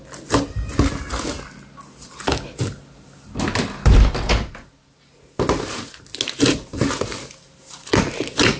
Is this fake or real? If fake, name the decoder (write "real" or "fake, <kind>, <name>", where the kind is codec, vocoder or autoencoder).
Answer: real